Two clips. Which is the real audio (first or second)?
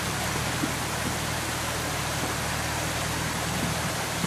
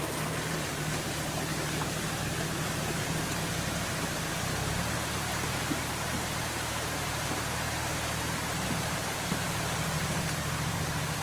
first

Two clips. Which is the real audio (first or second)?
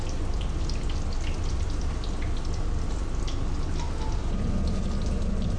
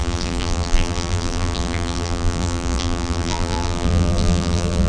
first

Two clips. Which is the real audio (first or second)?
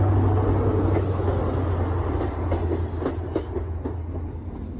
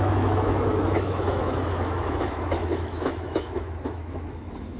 first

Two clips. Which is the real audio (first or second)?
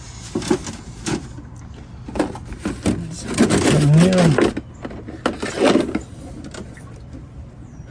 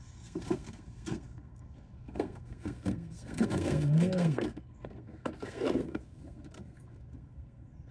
first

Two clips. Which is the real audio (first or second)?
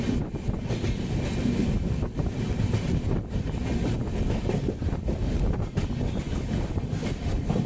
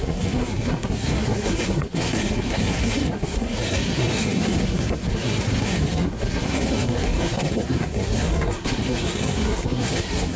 first